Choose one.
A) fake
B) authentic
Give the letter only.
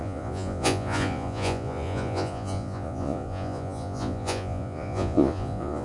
A